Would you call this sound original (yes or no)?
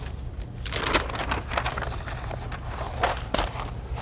yes